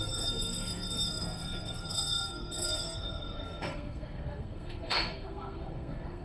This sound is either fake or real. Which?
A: fake